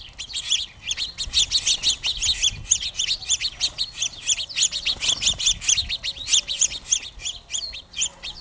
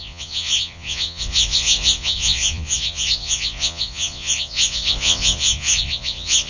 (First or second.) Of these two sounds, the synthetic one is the second